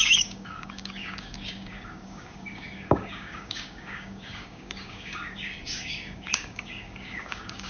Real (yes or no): no